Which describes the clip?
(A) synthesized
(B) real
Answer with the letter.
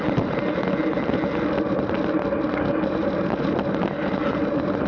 B